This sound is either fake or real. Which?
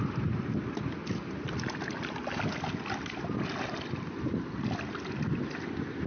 real